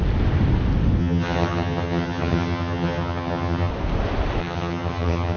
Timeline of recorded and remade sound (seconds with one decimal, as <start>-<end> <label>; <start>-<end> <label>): 0.0-1.0 recorded; 1.0-3.7 remade; 3.7-4.4 recorded; 4.4-5.4 remade